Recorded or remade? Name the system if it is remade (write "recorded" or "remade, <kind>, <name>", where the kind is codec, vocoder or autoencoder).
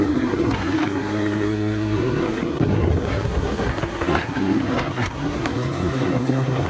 remade, codec, SNAC